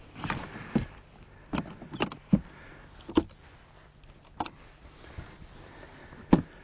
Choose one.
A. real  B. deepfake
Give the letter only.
A